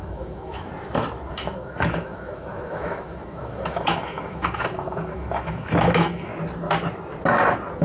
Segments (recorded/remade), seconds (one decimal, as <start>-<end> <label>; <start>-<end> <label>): 0.0-0.7 remade; 0.7-1.3 recorded; 1.3-6.3 remade; 6.3-7.8 recorded